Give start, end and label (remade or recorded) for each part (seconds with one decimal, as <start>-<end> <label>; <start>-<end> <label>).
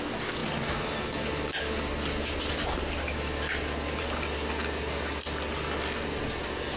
0.0-6.8 recorded